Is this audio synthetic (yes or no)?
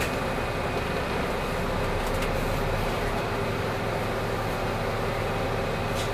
no